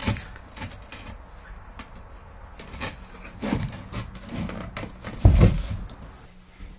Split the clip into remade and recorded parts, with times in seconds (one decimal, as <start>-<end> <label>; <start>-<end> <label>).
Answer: 0.0-6.8 recorded